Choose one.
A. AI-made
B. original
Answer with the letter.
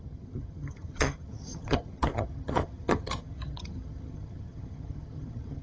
A